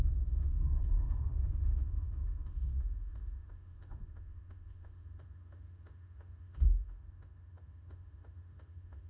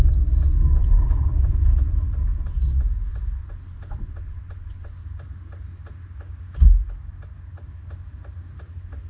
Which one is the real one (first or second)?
second